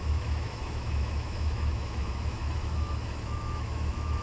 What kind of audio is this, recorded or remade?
remade